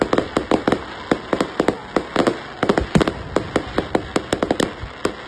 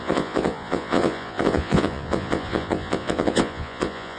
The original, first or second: first